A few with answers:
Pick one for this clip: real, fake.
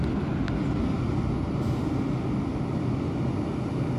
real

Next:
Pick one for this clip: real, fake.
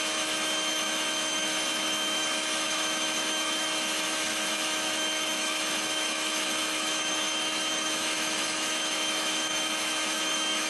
fake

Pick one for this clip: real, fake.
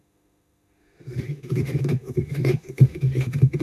fake